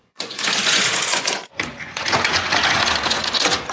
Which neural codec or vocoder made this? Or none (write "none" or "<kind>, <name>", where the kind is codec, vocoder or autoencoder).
vocoder, Vocos